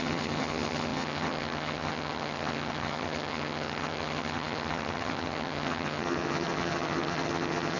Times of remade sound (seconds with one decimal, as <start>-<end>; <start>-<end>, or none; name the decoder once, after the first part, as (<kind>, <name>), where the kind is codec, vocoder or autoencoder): 0.0-7.8 (vocoder, HiFi-GAN)